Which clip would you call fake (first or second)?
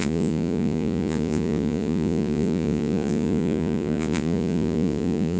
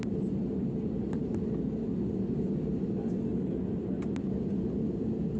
first